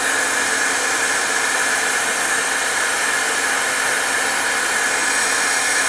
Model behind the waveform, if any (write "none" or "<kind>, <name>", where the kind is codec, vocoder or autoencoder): none